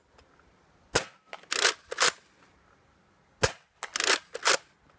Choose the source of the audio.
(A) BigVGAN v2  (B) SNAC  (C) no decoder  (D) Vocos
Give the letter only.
C